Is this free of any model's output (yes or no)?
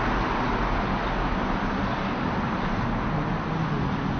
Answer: yes